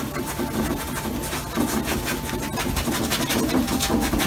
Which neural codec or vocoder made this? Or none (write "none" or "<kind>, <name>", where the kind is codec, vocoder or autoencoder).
none